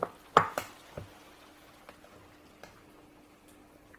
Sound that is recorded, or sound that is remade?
recorded